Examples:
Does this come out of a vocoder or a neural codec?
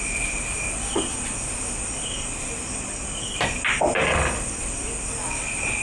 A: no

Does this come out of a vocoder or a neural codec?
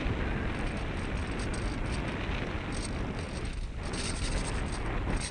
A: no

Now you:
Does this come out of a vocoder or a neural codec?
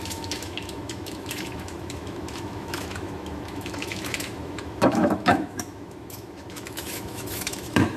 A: yes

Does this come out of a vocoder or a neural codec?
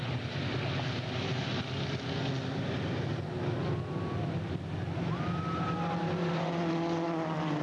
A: no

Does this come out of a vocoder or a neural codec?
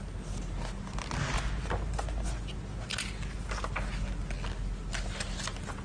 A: no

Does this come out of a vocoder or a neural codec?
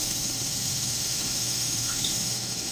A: yes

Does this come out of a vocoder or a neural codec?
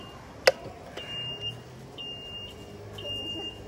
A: no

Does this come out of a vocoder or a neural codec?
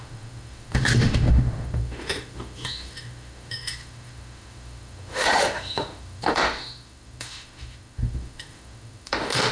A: yes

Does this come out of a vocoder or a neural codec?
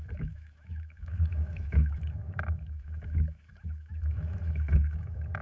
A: yes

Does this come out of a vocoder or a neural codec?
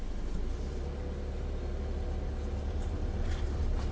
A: no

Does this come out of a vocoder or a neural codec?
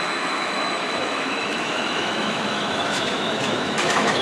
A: yes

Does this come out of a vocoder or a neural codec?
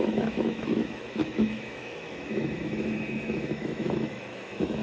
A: yes